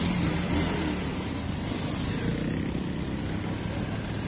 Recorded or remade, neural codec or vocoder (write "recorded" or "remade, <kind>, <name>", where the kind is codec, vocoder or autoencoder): recorded